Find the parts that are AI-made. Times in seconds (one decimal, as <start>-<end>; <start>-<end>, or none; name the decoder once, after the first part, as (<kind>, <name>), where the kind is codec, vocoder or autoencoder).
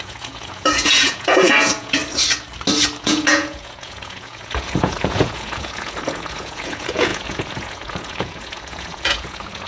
0.0-2.0 (vocoder, Vocos); 3.0-9.7